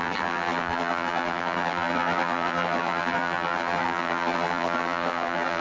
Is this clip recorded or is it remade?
remade